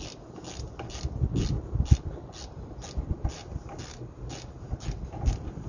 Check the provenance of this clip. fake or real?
real